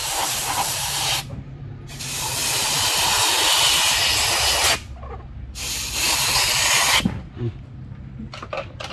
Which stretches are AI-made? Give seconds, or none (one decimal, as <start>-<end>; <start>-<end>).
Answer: 0.0-2.0